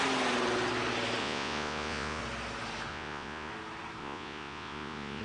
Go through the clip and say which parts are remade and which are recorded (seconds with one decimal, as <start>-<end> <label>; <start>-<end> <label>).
0.0-1.2 recorded; 1.2-2.2 remade; 2.2-2.9 recorded; 2.9-3.5 remade; 3.5-4.0 recorded; 4.0-5.2 remade

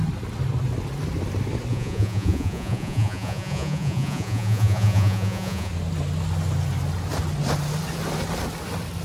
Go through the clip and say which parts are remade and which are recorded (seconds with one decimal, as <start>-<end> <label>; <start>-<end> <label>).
0.0-1.7 recorded; 1.7-5.7 remade; 5.7-9.0 recorded

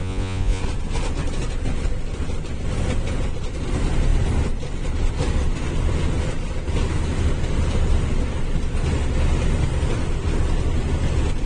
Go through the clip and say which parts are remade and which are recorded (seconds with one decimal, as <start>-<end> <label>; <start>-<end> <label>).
0.0-0.6 remade; 0.6-11.5 recorded